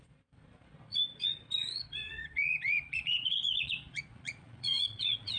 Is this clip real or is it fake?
fake